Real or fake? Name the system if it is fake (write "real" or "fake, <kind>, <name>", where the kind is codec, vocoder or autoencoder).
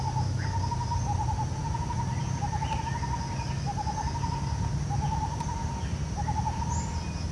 real